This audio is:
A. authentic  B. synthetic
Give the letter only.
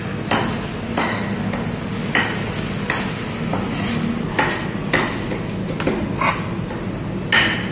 A